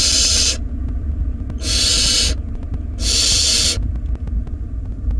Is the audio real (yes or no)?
yes